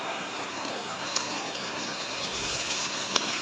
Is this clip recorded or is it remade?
remade